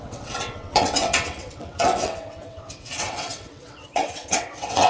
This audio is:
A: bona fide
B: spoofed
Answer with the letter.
B